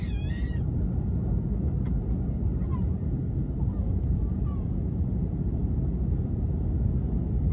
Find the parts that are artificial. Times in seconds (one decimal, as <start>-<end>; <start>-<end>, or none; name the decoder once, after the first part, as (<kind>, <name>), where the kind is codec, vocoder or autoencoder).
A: 2.7-5.6 (vocoder, BigVGAN v2)